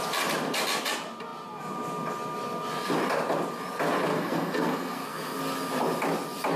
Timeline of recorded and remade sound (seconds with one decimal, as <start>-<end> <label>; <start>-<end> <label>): 0.0-4.1 recorded; 4.1-5.4 remade; 5.4-6.6 recorded